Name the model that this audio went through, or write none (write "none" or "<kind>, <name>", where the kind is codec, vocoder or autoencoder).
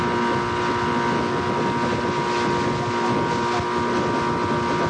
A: none